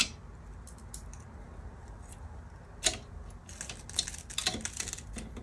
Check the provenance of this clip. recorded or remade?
recorded